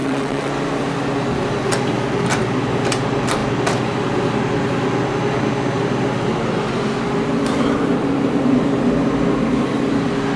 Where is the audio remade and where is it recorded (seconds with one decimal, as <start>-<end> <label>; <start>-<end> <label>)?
0.0-0.5 remade; 0.5-10.4 recorded